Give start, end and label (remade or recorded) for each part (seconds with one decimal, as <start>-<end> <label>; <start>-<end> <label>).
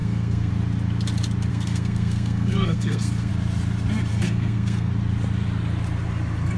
0.0-0.5 remade; 0.5-1.5 recorded; 1.5-3.3 remade; 3.3-4.1 recorded; 4.1-4.9 remade; 4.9-6.6 recorded